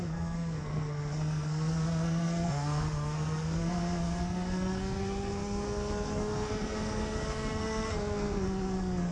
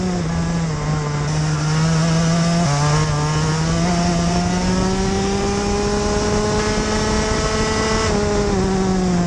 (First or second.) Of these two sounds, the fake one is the first